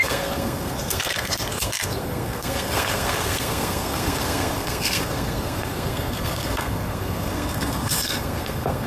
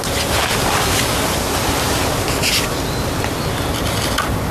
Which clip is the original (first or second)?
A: second